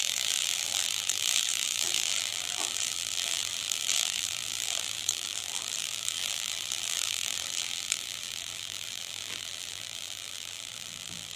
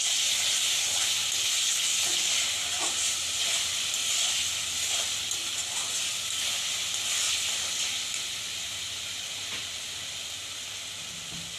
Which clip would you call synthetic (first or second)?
first